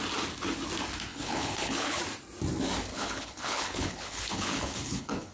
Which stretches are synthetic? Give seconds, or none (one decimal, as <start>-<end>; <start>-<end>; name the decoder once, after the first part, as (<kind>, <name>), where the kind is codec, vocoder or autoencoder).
1.1-2.0 (codec, HILCodec); 2.9-5.3